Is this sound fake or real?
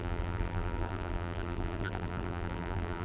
fake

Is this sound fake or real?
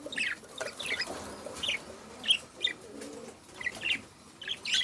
real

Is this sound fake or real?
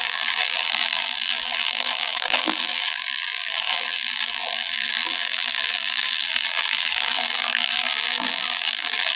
fake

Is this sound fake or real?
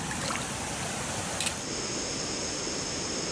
real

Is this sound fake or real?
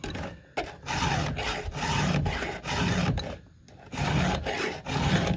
real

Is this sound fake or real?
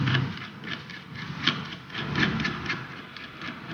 fake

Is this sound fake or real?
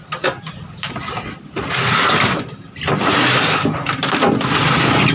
real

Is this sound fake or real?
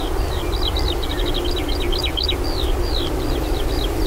real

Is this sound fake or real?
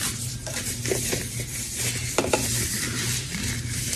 fake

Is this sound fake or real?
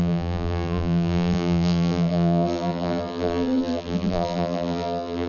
fake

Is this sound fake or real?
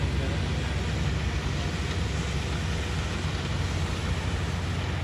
real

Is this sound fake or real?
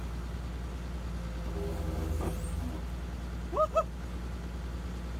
real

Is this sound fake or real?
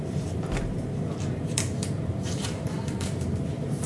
fake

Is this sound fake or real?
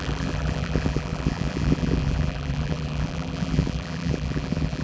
fake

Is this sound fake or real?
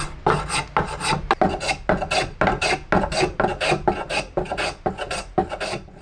real